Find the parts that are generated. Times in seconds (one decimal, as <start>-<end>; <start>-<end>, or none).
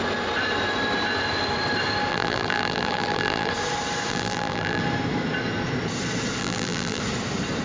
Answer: 2.1-3.5; 4.1-4.8; 6.4-7.0